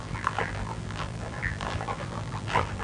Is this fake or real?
fake